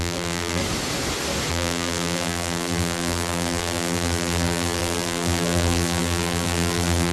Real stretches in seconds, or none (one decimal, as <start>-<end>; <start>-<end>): 0.6-1.5